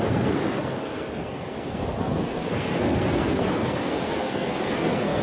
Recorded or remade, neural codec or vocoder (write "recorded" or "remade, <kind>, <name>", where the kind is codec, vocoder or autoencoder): remade, codec, SNAC